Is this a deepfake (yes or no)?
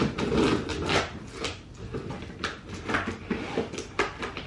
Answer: no